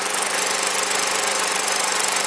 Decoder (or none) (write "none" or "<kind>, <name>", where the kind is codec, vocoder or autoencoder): vocoder, BigVGAN v2